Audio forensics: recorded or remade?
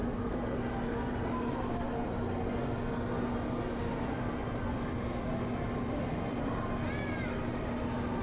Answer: recorded